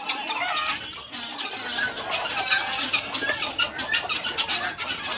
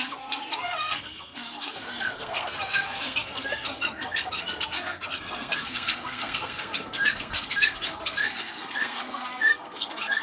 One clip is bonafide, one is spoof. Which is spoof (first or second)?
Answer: second